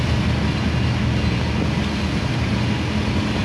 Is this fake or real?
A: real